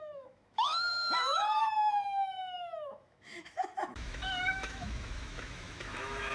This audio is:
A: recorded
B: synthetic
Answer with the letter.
B